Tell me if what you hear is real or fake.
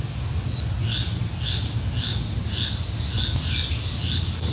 real